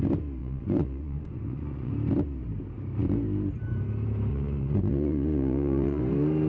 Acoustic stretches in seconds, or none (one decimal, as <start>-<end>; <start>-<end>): 0.0-0.4; 1.9-4.3; 6.0-6.5